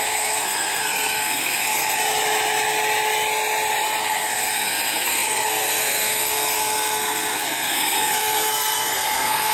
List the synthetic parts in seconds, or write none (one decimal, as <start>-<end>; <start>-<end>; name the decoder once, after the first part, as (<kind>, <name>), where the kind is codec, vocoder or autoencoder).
0.0-2.0 (codec, SNAC); 4.0-9.5